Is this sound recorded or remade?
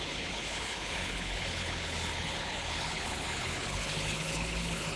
remade